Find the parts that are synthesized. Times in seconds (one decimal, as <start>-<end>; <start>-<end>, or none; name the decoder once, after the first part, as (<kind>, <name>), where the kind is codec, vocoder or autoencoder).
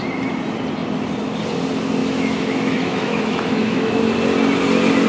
2.0-4.0 (autoencoder, DAC-VAE)